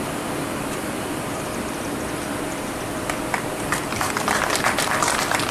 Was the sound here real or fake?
fake